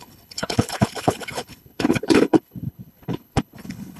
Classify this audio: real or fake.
fake